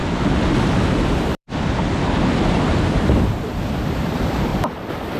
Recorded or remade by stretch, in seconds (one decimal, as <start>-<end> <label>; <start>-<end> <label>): 0.0-0.5 recorded; 0.5-4.5 remade; 4.5-5.2 recorded